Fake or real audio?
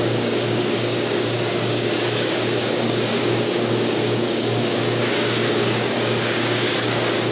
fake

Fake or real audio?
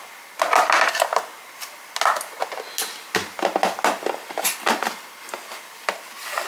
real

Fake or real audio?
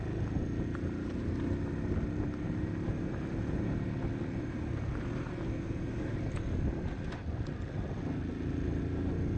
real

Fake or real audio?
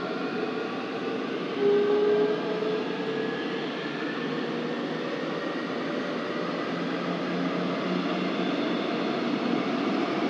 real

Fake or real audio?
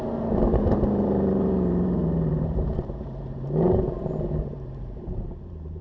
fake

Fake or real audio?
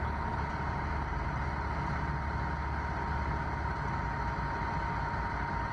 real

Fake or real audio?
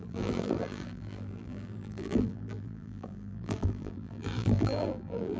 fake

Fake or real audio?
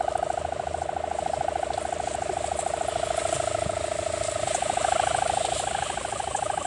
real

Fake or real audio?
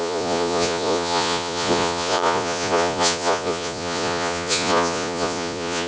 fake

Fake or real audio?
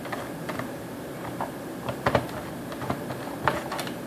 real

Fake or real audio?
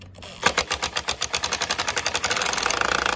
real